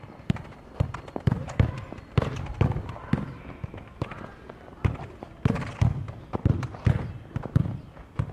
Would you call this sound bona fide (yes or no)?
yes